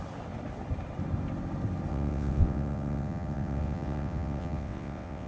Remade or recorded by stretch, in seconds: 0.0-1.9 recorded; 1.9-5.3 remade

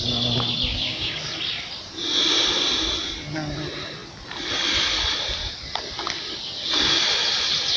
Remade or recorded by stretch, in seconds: 0.0-0.7 recorded; 0.7-1.2 remade; 1.2-7.8 recorded

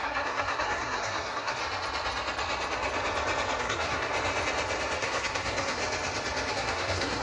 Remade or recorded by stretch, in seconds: 0.0-1.6 remade; 1.6-3.6 recorded; 3.6-4.1 remade; 4.1-5.0 recorded; 5.0-5.8 remade; 5.8-6.5 recorded; 6.5-7.2 remade

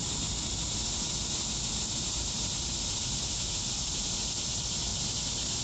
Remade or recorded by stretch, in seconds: 0.0-5.6 recorded